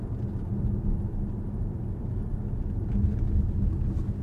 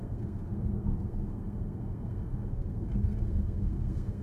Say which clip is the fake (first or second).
second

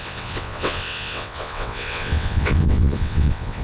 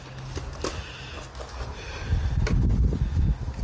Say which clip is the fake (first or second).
first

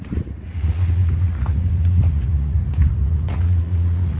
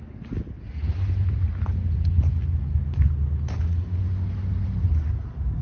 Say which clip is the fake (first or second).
first